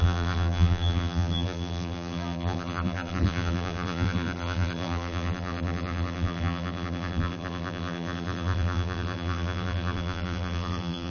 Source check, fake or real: fake